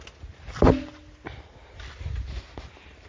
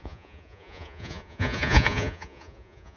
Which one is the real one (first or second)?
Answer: first